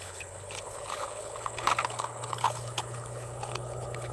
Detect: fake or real fake